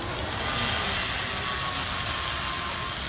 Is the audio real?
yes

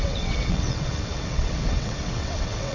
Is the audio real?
no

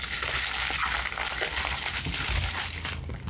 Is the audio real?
yes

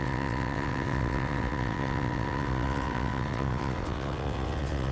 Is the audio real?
no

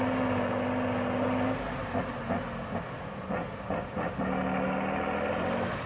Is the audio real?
yes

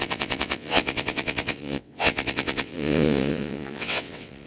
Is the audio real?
no